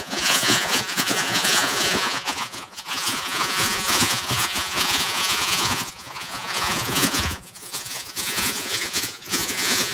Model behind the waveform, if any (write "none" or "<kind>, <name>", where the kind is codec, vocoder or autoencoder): vocoder, Vocos